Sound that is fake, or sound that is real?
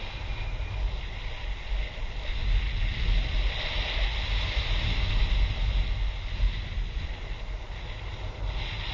real